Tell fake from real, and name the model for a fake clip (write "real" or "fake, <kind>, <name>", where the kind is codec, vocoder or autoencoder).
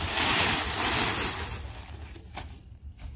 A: real